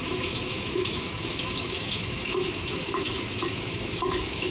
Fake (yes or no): yes